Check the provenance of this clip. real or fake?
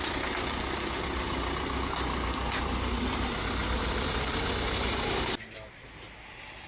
real